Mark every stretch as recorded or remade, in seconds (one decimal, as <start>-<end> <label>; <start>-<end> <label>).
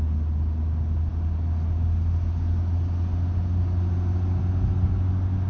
0.0-5.5 recorded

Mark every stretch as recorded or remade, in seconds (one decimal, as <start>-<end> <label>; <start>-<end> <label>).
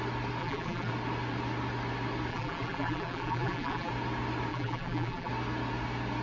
0.0-0.4 recorded; 0.4-0.9 remade; 0.9-2.3 recorded; 2.3-3.9 remade; 3.9-4.5 recorded; 4.5-5.3 remade; 5.3-6.2 recorded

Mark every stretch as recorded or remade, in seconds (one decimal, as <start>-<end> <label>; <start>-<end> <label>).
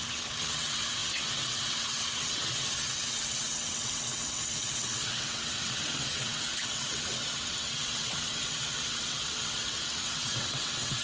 0.0-11.0 remade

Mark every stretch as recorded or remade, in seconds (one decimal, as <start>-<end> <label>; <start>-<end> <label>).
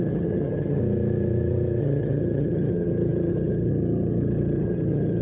0.0-0.8 remade; 0.8-1.8 recorded; 1.8-5.2 remade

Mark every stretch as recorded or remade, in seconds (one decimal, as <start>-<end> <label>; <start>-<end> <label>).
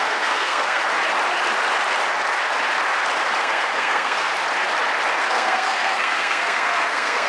0.0-0.8 remade; 0.8-3.4 recorded; 3.4-4.3 remade; 4.3-5.2 recorded; 5.2-7.3 remade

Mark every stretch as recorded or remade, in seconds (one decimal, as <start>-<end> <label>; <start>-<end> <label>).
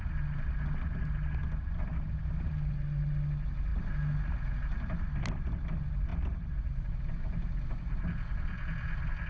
0.0-9.3 recorded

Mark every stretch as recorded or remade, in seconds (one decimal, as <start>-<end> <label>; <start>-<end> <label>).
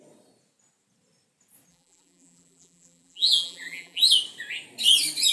0.0-1.7 recorded; 1.7-4.0 remade; 4.0-5.3 recorded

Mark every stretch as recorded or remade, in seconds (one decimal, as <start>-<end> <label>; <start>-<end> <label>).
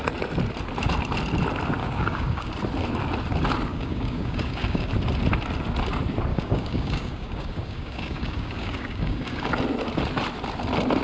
0.0-1.8 recorded; 1.8-2.5 remade; 2.5-3.7 recorded; 3.7-4.9 remade; 4.9-6.3 recorded; 6.3-9.5 remade; 9.5-11.0 recorded